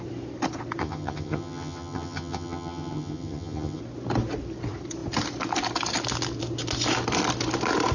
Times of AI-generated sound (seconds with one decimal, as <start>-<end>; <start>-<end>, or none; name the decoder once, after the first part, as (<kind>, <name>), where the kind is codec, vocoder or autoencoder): 0.8-3.8 (vocoder, HiFi-GAN)